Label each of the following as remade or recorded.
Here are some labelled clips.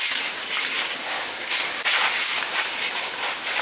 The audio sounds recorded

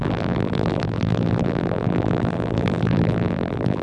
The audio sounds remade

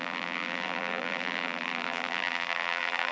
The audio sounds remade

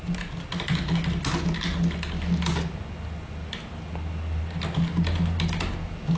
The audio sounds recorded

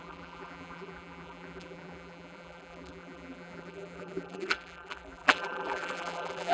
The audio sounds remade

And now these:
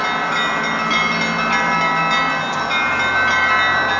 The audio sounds recorded